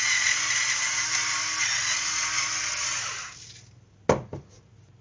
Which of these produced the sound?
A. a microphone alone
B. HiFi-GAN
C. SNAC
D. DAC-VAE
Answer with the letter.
A